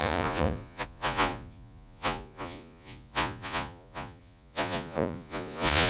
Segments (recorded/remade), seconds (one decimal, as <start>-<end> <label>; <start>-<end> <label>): 0.0-5.9 remade